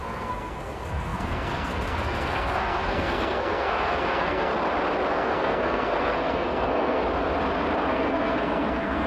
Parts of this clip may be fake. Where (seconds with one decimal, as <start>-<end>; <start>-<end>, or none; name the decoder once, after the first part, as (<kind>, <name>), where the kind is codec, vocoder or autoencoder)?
0.0-4.5 (codec, SNAC); 5.1-7.0; 7.9-9.1